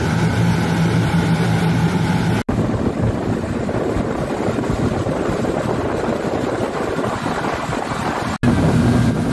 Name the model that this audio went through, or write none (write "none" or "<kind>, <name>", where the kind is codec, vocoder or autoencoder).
none